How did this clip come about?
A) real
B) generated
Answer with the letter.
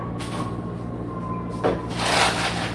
A